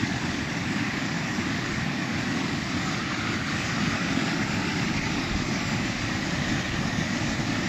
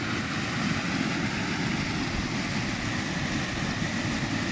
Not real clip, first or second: first